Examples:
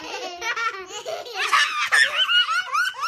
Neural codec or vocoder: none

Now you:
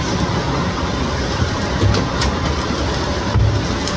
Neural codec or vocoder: none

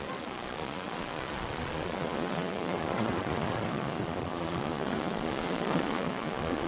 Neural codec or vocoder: vocoder, Vocos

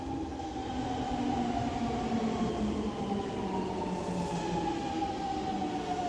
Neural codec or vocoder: none